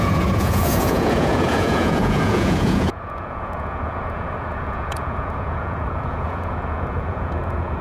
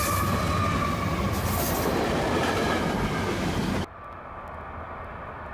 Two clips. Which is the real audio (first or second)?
second